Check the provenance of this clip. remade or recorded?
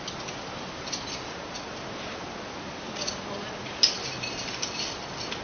recorded